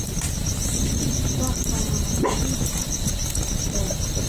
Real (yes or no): yes